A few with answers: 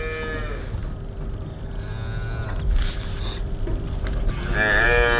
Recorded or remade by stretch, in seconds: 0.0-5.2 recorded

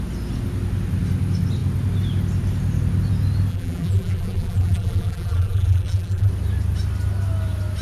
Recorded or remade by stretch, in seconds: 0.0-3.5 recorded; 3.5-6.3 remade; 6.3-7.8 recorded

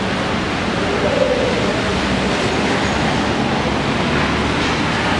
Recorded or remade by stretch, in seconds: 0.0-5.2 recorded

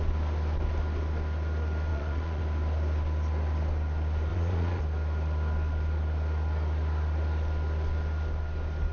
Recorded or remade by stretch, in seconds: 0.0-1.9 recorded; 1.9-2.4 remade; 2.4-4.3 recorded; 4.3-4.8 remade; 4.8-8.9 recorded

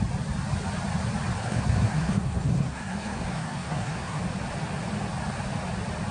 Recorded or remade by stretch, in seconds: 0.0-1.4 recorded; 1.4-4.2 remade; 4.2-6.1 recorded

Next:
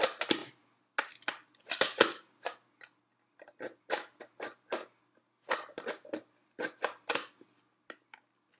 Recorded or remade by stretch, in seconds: 0.0-8.6 recorded

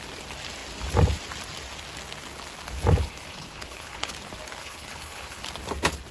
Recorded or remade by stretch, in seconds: 0.0-3.0 recorded; 3.0-4.1 remade; 4.1-4.6 recorded; 4.6-5.4 remade; 5.4-6.1 recorded

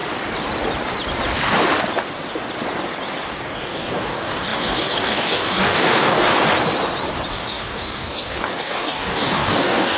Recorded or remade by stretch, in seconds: 0.0-3.3 recorded; 3.3-6.3 remade; 6.3-7.3 recorded; 7.3-10.0 remade